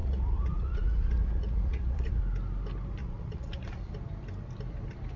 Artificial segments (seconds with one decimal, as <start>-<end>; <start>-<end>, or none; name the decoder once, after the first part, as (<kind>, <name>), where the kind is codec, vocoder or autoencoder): 0.0-2.2 (vocoder, Vocos); 3.0-3.9